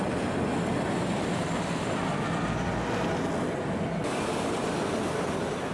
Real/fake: real